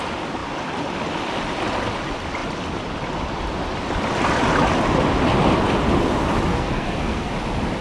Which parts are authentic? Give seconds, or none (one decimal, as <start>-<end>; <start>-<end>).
0.0-6.5; 7.3-7.8